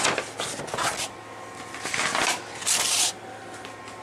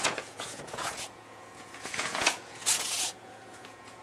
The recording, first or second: first